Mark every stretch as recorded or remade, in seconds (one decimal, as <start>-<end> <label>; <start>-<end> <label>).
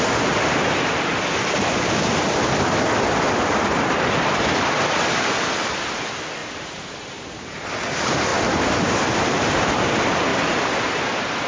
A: 0.0-6.4 recorded; 6.4-7.7 remade; 7.7-8.3 recorded; 8.3-9.7 remade; 9.7-10.3 recorded; 10.3-11.0 remade; 11.0-11.5 recorded